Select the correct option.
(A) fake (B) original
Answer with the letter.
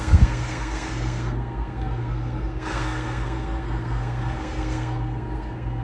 A